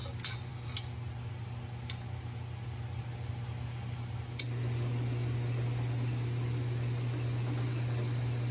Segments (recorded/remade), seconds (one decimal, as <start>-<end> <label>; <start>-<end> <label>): 0.0-8.5 recorded